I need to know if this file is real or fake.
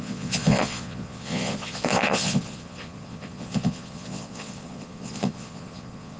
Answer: fake